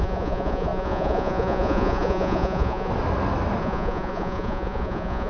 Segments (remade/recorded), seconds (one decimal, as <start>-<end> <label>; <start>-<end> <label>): 0.0-2.9 remade; 2.9-3.6 recorded; 3.6-5.3 remade